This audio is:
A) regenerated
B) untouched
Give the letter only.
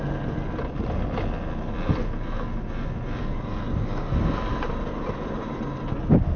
B